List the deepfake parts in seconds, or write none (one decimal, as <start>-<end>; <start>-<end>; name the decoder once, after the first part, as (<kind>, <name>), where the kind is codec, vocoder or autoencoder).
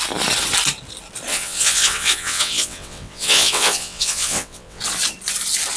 1.3-4.8 (vocoder, WaveNeXt)